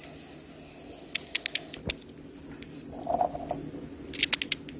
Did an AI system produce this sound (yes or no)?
no